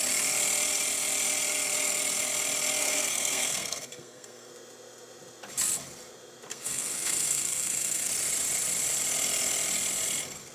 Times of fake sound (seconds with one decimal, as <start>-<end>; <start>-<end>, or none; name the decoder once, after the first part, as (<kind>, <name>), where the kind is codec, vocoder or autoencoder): 2.8-4.5 (codec, SNAC); 6.5-8.1